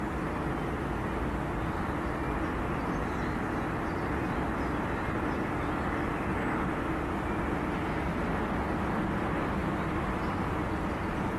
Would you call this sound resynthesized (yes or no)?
no